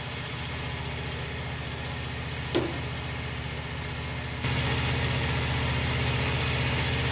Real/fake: real